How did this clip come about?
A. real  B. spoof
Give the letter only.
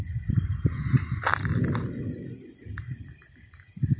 A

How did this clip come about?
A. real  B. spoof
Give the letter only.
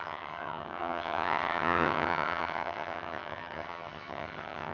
B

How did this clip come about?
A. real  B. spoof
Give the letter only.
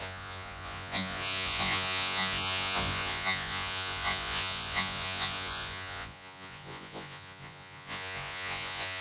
B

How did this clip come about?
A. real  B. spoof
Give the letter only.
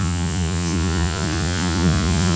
B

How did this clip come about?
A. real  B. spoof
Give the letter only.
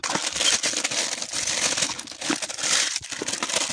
A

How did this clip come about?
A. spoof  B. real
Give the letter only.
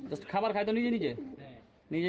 B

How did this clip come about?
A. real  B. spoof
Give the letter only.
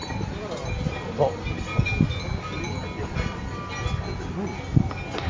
A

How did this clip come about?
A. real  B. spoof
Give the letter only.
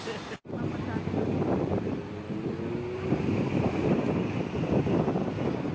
A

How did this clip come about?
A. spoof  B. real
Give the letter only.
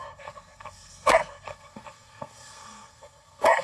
A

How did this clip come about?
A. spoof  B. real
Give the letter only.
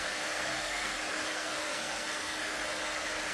A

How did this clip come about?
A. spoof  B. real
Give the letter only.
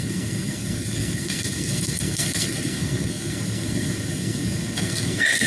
A